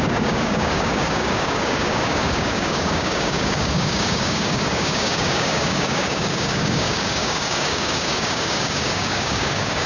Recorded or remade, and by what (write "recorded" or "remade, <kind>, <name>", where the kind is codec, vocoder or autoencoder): remade, codec, DAC